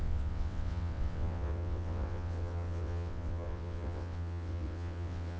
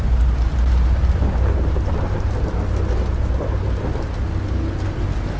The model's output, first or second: first